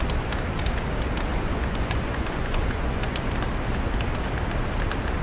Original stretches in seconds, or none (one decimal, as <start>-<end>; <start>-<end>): 0.0-1.3; 3.3-5.2